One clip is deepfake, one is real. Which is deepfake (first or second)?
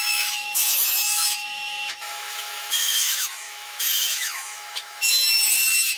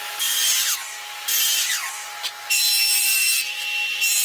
first